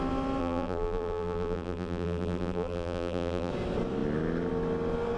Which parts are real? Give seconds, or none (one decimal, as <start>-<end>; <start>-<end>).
0.0-0.4; 3.5-5.2